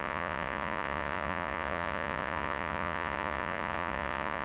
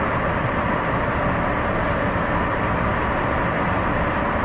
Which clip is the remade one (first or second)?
first